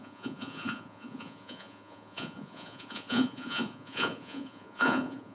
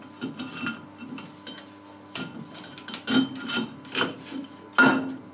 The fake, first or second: first